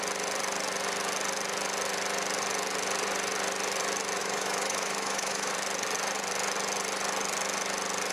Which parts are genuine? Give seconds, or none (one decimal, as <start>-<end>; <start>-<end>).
0.0-4.2; 5.5-8.1